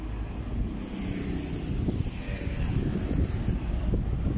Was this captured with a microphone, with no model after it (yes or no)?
yes